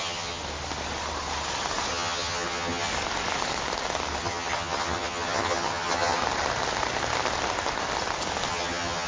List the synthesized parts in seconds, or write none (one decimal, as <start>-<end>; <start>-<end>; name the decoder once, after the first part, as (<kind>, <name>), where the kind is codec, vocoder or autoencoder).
0.0-0.4 (vocoder, HiFi-GAN); 1.9-2.9; 4.2-6.2; 8.5-9.1